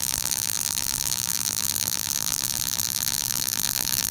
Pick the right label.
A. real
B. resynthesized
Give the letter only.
B